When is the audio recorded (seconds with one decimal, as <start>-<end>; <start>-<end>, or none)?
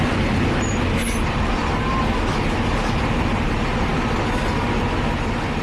0.0-5.6